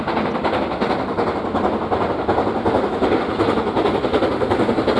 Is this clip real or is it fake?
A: real